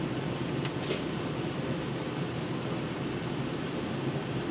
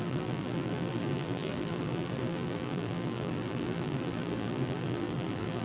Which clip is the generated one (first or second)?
second